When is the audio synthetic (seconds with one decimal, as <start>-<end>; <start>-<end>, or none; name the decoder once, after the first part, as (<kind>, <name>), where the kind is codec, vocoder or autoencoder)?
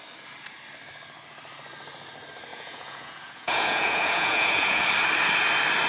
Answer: 2.5-4.8 (vocoder, Vocos)